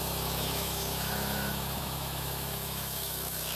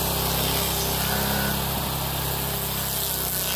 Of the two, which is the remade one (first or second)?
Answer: first